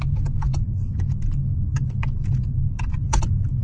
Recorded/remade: remade